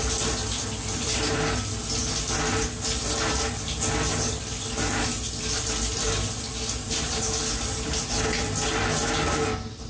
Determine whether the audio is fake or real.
real